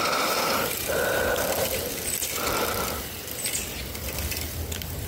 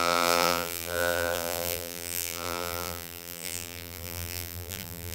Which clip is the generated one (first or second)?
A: second